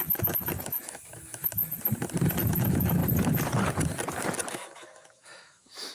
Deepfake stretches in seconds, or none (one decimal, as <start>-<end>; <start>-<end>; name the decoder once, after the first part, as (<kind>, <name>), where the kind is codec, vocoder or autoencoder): 0.0-1.6 (autoencoder, DAC-VAE); 2.5-3.0; 4.5-5.9